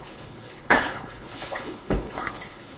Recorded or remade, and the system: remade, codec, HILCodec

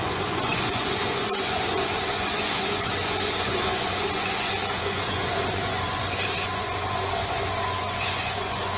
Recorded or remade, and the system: remade, vocoder, Vocos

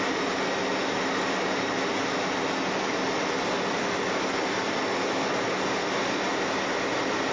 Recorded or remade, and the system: recorded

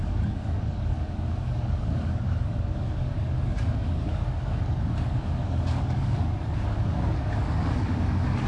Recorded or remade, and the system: remade, codec, DAC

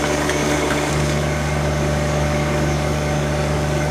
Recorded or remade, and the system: remade, codec, DAC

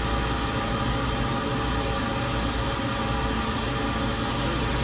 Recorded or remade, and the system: recorded